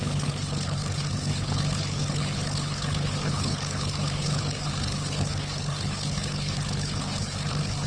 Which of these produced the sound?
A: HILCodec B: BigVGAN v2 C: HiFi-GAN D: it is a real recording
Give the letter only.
A